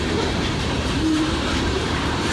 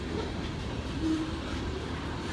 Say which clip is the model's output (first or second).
first